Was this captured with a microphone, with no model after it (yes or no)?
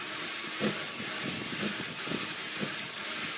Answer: yes